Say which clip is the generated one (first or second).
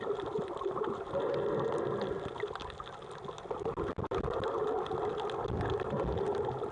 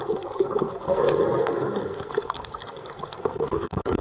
second